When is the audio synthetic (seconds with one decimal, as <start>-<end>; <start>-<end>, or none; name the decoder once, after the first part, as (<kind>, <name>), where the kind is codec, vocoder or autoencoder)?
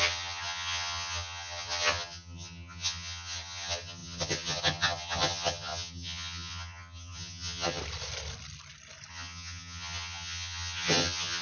0.0-7.8 (vocoder, HiFi-GAN); 9.1-11.4